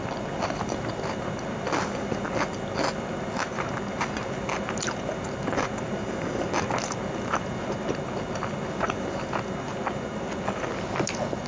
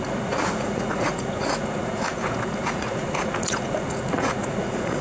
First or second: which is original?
first